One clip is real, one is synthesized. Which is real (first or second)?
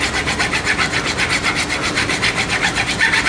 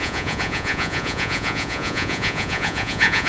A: first